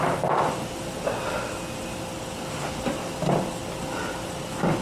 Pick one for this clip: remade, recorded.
recorded